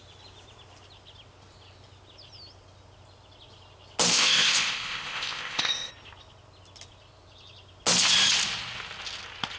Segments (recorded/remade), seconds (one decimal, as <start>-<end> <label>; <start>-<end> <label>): 0.0-4.1 recorded; 4.1-5.9 remade; 5.9-9.6 recorded